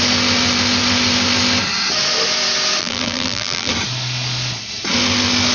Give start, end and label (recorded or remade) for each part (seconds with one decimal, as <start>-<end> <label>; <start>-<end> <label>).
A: 0.0-2.8 recorded; 2.8-3.7 remade; 3.7-5.5 recorded